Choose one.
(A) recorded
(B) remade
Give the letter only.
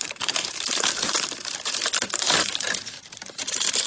B